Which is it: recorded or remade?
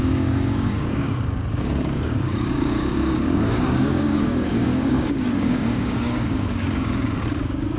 remade